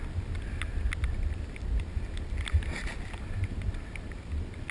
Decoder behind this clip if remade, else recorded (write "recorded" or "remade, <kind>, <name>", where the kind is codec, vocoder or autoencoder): recorded